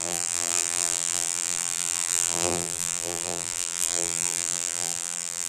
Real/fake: fake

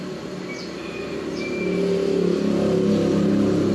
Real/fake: real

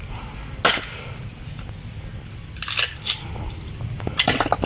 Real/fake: real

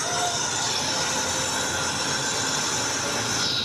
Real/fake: real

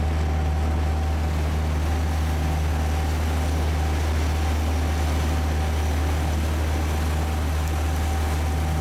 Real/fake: real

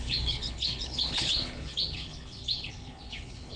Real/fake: fake